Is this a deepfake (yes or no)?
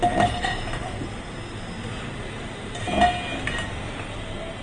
no